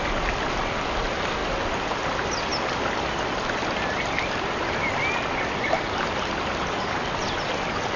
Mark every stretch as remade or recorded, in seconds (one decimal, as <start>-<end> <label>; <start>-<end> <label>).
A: 0.0-8.0 recorded